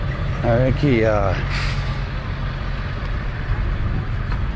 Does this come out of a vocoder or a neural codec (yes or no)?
no